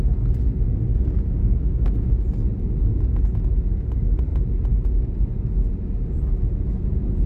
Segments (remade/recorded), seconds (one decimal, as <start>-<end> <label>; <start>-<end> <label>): 0.0-1.4 recorded; 1.4-1.9 remade; 1.9-7.3 recorded